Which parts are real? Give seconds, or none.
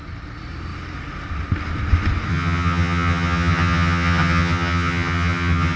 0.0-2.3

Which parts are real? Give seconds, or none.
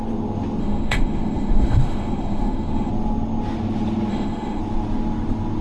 0.0-0.6; 2.9-4.1; 4.6-5.6